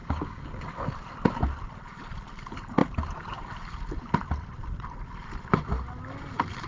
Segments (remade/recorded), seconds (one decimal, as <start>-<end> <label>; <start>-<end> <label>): 0.0-0.9 remade; 0.9-6.7 recorded